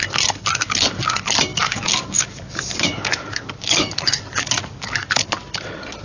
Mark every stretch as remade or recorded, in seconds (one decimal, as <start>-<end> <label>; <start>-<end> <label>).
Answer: 0.0-1.5 recorded; 1.5-5.1 remade; 5.1-6.0 recorded